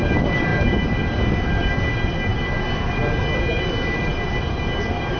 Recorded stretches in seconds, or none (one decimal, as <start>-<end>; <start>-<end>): 0.0-5.2